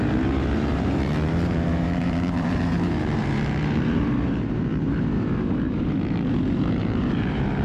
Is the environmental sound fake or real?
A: fake